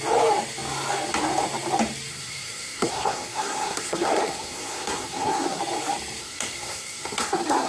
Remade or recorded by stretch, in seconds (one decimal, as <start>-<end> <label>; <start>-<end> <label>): 0.0-2.1 recorded; 2.1-5.6 remade; 5.6-6.2 recorded; 6.2-7.7 remade